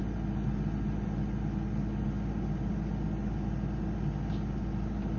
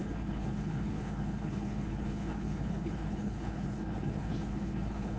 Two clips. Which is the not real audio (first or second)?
second